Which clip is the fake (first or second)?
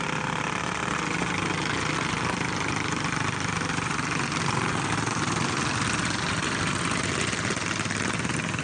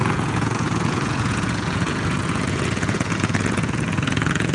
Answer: second